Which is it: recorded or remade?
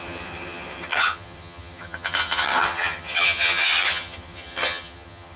remade